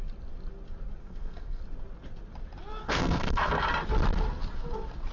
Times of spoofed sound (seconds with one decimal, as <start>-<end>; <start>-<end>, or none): 1.0-1.6; 2.8-3.7